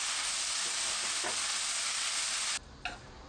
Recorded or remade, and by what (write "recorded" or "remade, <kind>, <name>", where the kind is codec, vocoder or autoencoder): recorded